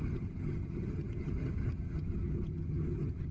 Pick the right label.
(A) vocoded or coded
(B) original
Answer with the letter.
A